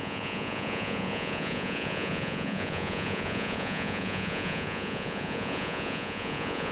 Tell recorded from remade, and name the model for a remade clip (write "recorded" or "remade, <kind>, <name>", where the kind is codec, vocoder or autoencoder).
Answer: remade, vocoder, Vocos